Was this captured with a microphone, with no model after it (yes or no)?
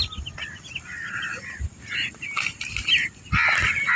yes